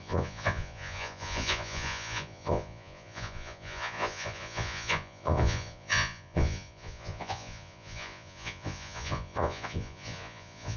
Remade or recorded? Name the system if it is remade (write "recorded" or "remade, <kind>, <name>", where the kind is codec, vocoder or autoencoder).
remade, vocoder, Vocos